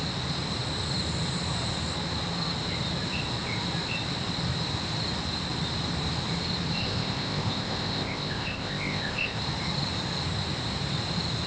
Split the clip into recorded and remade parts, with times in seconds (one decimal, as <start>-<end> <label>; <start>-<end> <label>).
0.0-6.8 recorded; 6.8-9.4 remade; 9.4-11.5 recorded